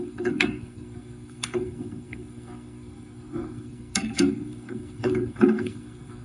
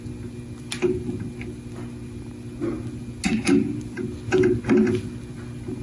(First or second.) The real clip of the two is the second